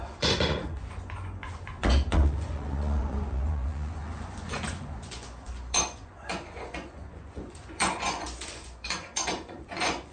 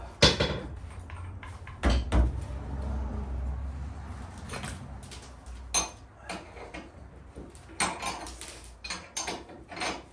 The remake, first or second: first